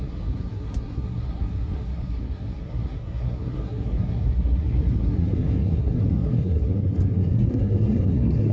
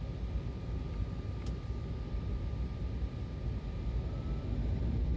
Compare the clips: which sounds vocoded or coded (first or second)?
first